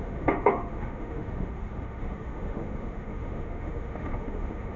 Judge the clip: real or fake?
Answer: fake